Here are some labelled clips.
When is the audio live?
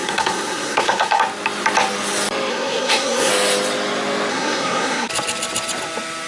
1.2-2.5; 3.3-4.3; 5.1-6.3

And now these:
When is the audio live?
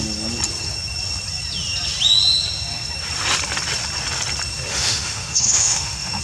0.0-4.7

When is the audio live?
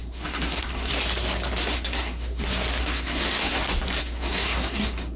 0.9-1.6; 2.4-2.8; 3.6-4.0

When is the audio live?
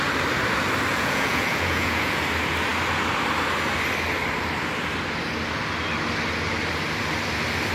0.0-0.9; 2.2-7.7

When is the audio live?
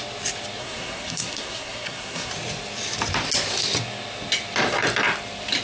0.0-0.6; 2.3-5.6